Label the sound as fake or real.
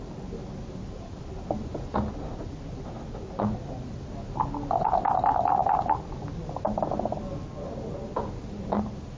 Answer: real